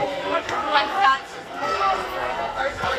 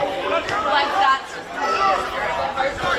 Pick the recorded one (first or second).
second